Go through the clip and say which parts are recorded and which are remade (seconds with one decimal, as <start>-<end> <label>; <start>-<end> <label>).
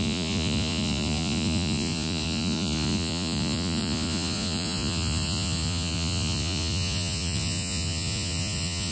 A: 0.0-8.9 remade